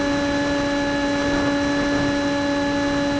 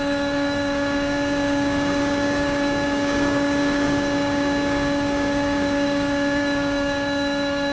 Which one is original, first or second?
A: first